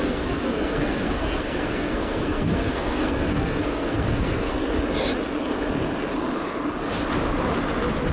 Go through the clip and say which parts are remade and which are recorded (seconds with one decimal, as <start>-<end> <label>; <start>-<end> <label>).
0.0-4.6 remade; 4.6-8.1 recorded